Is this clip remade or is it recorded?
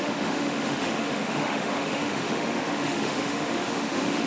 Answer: remade